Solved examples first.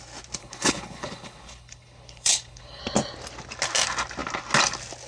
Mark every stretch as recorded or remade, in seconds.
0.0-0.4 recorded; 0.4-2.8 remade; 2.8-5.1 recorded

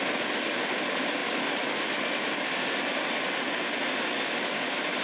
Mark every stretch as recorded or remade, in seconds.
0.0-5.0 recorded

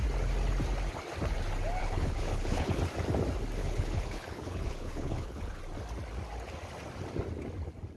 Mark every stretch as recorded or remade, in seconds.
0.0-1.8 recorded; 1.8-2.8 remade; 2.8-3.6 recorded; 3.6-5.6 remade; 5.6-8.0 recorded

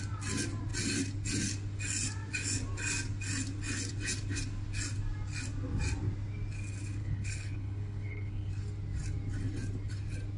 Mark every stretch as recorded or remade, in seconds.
0.0-7.0 recorded; 7.0-8.5 remade; 8.5-10.4 recorded

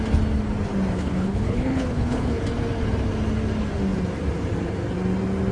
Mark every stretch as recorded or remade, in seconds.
0.0-1.0 recorded; 1.0-2.4 remade; 2.4-5.5 recorded